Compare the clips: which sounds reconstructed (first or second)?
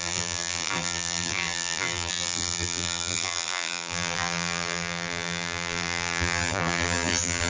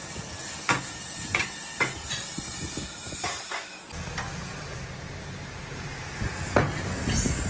first